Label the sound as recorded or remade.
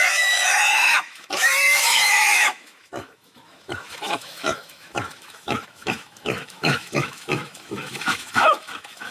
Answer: remade